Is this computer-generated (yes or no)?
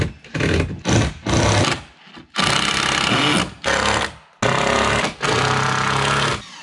no